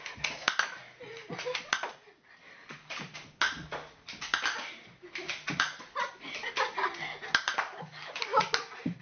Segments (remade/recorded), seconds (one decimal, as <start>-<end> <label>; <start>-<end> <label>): 0.0-7.7 recorded; 7.7-8.4 remade; 8.4-9.0 recorded